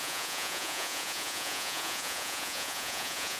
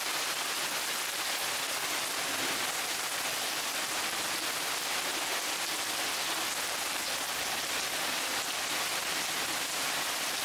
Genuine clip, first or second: second